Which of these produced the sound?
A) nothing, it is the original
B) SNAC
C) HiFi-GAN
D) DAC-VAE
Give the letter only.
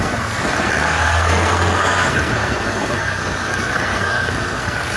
B